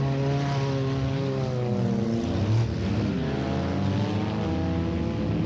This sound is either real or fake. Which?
real